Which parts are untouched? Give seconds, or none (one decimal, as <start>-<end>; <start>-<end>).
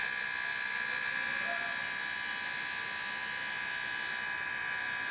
0.0-5.1